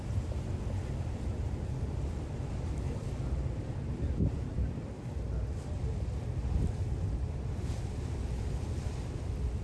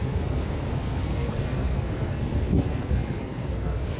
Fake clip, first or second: second